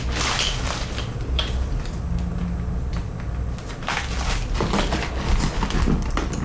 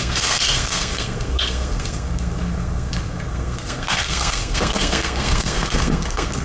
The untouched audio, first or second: first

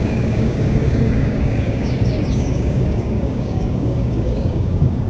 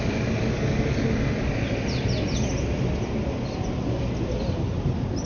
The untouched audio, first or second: second